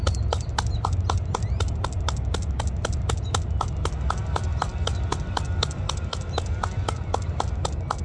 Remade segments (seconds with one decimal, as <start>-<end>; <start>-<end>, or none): none